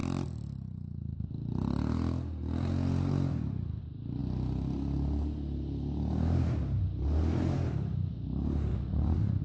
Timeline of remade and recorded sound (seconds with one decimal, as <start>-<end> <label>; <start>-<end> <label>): 0.0-8.7 recorded; 8.7-9.4 remade

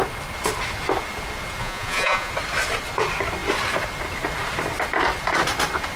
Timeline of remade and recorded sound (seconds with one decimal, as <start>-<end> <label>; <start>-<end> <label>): 0.0-1.6 recorded; 1.6-2.3 remade; 2.3-6.0 recorded

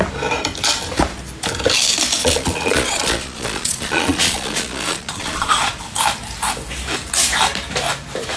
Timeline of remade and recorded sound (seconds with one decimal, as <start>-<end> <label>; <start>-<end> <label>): 0.0-2.2 recorded; 2.2-5.8 remade; 5.8-8.4 recorded

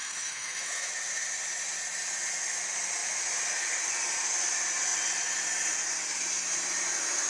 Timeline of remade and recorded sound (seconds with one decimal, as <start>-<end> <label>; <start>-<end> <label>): 0.0-0.9 remade; 0.9-7.3 recorded

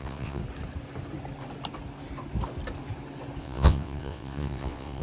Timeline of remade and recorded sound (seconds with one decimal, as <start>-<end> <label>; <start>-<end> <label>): 0.0-0.4 remade; 0.4-3.4 recorded; 3.4-5.0 remade